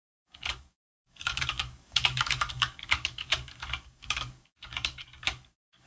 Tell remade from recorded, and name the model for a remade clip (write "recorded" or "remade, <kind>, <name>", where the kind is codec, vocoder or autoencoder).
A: remade, codec, DAC